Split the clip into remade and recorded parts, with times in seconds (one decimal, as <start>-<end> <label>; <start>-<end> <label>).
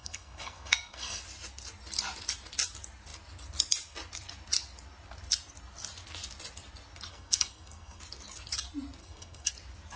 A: 0.0-1.2 remade; 1.2-7.1 recorded; 7.1-8.0 remade; 8.0-9.0 recorded; 9.0-9.5 remade; 9.5-10.0 recorded